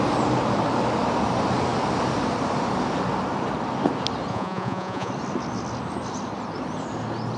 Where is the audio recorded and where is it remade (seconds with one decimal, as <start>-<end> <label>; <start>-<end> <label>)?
0.0-4.3 recorded; 4.3-5.1 remade; 5.1-7.4 recorded